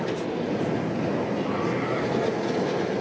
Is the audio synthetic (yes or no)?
no